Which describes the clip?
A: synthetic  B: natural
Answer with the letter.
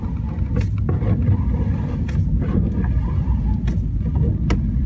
B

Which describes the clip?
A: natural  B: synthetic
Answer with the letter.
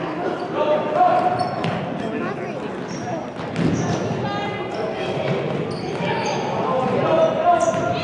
A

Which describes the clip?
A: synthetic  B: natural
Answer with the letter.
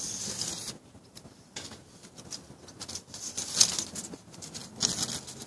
B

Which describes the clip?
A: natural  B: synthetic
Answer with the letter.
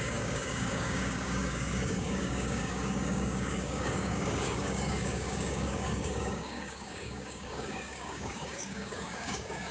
B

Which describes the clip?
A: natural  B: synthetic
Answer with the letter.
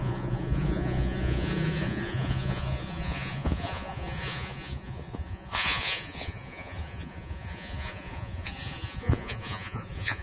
B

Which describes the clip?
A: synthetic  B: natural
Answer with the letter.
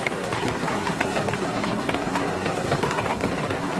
A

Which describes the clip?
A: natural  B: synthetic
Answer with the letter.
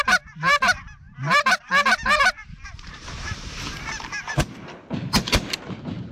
B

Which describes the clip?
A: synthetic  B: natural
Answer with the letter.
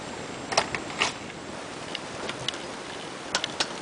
B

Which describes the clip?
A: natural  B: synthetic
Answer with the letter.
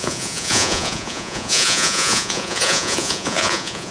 B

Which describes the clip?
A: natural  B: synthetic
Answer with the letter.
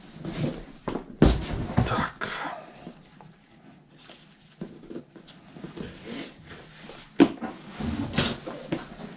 A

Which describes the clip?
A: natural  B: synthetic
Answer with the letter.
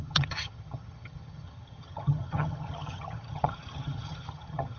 B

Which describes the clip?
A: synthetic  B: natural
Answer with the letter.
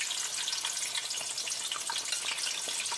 B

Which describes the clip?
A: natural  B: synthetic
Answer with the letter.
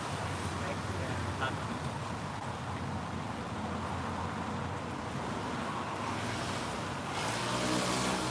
A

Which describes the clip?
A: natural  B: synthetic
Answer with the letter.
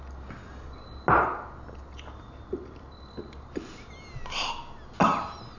A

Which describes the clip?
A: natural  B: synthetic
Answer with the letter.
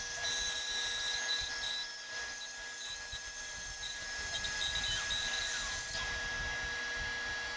A